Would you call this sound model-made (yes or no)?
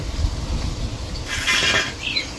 no